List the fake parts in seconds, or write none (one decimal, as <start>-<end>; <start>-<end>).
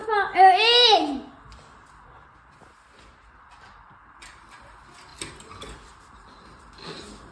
none